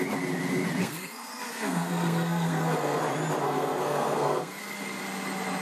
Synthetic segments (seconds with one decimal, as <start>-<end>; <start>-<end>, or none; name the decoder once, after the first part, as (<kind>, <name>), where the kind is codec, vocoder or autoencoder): 0.8-3.0 (codec, SNAC); 3.4-4.6